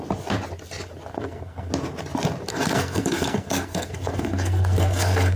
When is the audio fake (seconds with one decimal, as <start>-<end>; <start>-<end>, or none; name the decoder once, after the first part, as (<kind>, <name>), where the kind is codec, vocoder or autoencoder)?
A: 1.1-1.7 (codec, SNAC); 2.5-5.4